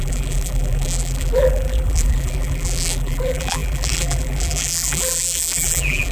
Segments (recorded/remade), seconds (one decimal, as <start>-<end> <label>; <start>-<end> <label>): 0.0-6.1 remade